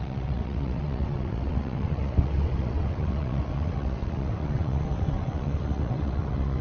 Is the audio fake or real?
fake